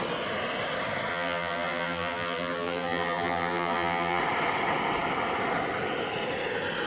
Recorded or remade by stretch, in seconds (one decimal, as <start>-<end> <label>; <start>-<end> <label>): 0.0-1.1 recorded; 1.1-4.2 remade; 4.2-6.9 recorded

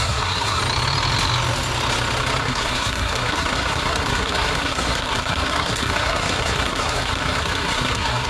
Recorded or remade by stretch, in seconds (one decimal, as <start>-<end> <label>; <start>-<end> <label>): 0.0-0.6 remade; 0.6-2.4 recorded; 2.4-8.3 remade

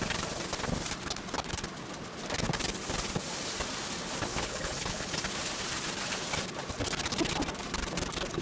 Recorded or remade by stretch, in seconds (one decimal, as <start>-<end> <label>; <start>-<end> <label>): 0.0-4.3 recorded; 4.3-5.1 remade; 5.1-8.4 recorded

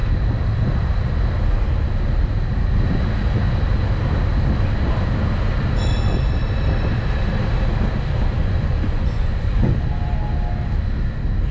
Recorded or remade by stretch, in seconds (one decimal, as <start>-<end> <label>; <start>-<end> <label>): 0.0-8.4 recorded; 8.4-9.8 remade; 9.8-11.5 recorded